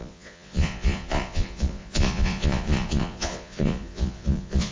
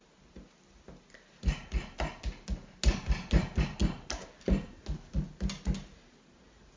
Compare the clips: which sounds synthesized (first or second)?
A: first